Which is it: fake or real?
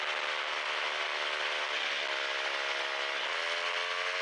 real